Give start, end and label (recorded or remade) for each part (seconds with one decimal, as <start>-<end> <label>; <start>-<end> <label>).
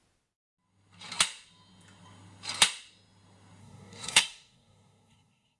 0.0-3.6 recorded; 3.6-5.6 remade